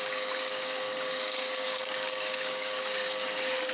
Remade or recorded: remade